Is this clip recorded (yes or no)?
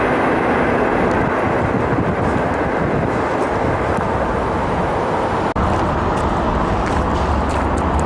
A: yes